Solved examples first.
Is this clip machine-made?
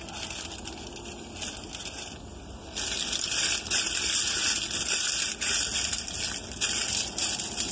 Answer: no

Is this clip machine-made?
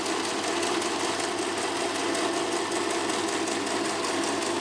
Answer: no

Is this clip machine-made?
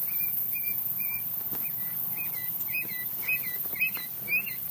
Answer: no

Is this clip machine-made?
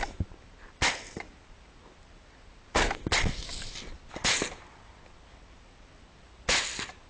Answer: no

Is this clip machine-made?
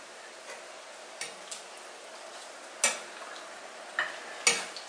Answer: no